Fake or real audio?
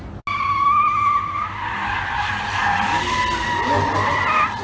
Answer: real